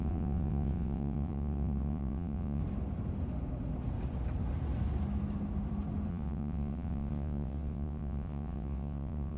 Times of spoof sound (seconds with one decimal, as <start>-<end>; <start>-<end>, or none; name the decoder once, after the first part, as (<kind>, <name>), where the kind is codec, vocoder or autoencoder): 0.0-2.6 (vocoder, WaveNeXt); 6.1-9.4